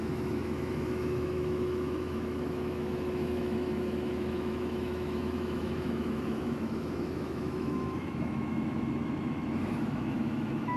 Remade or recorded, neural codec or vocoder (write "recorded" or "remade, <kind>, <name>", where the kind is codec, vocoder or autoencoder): remade, autoencoder, DAC-VAE